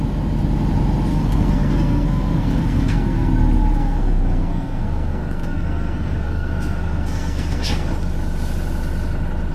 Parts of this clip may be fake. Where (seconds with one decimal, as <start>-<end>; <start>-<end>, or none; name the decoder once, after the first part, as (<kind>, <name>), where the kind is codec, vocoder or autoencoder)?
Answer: 1.1-3.3 (codec, SNAC); 3.8-7.9